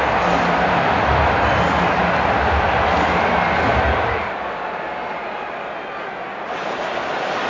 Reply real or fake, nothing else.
real